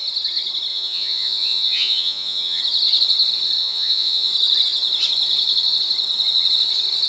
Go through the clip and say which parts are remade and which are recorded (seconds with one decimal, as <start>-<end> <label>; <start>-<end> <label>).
0.0-0.7 recorded; 0.7-2.6 remade; 2.6-3.6 recorded; 3.6-4.3 remade; 4.3-7.1 recorded